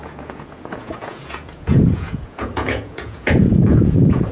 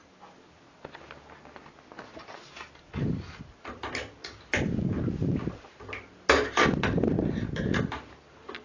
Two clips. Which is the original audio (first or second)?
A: second